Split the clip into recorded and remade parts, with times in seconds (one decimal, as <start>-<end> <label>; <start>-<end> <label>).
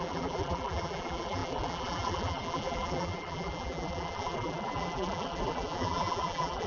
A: 0.0-6.7 remade